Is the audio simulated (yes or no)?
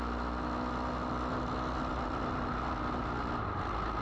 no